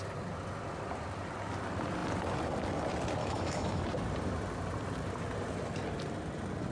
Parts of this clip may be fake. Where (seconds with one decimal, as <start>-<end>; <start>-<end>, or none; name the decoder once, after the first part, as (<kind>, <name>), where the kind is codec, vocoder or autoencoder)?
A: 3.2-3.8 (autoencoder, DAC-VAE)